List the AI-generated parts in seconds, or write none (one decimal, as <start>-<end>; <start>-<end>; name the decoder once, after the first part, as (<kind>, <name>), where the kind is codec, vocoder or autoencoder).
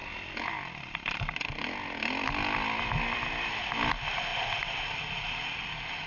none